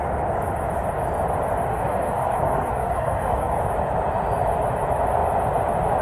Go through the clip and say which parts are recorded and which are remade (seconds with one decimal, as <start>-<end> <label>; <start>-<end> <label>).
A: 0.0-1.7 recorded; 1.7-3.6 remade; 3.6-6.0 recorded